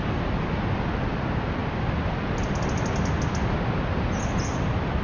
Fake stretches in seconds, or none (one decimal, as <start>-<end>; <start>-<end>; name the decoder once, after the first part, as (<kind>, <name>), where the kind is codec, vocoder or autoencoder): none